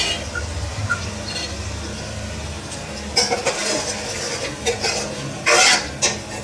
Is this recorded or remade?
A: recorded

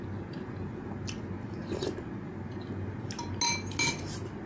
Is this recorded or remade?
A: recorded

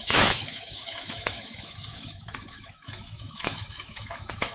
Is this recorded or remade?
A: remade